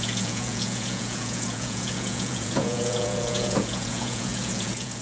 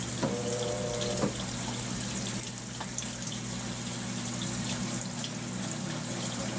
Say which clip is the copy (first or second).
first